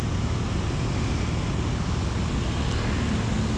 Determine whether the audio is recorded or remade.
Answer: recorded